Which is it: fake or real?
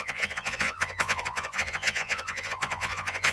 fake